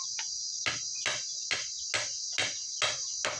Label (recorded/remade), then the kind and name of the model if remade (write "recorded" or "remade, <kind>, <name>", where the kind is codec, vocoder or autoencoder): recorded